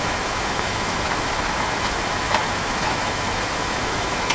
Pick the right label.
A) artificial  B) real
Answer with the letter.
A